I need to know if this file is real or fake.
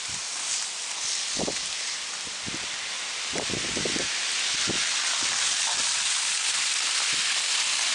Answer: real